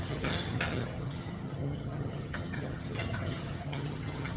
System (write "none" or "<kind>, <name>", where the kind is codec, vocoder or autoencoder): vocoder, HiFi-GAN